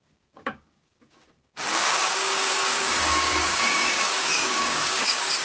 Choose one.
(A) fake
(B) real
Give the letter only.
A